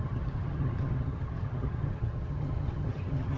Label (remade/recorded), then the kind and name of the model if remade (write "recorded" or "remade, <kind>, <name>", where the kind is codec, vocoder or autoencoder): remade, vocoder, HiFi-GAN